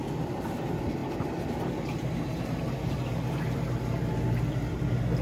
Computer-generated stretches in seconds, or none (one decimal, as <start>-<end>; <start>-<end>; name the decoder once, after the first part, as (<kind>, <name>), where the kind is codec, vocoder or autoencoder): none